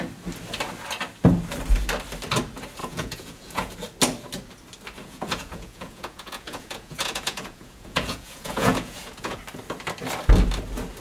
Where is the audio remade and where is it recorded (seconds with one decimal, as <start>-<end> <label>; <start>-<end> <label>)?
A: 0.0-2.8 recorded; 2.8-3.7 remade; 3.7-5.0 recorded; 5.0-9.4 remade; 9.4-11.0 recorded